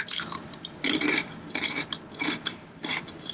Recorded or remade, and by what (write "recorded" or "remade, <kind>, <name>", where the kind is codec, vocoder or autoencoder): remade, vocoder, BigVGAN v2